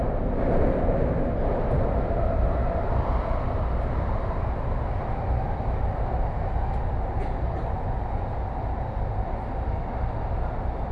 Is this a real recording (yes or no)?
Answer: yes